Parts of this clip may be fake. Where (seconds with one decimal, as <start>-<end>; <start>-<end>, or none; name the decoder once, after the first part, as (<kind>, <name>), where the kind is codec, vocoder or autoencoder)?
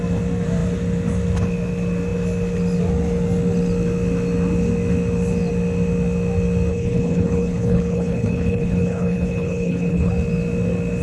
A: 6.7-10.1 (codec, HILCodec)